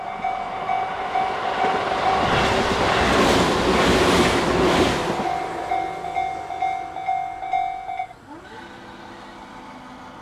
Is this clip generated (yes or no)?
no